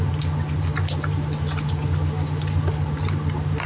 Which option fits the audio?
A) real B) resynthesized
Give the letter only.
A